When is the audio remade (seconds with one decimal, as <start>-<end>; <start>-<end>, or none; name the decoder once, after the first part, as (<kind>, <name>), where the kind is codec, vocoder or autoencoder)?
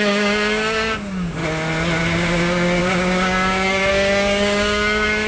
0.0-1.4 (codec, DAC); 2.0-5.3